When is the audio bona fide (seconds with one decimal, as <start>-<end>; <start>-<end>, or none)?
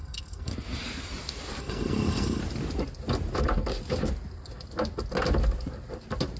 0.5-1.6; 2.4-6.4